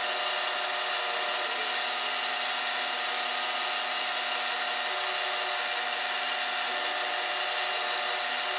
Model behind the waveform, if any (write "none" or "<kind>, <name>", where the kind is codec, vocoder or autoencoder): none